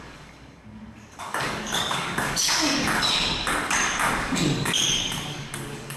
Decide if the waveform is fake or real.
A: fake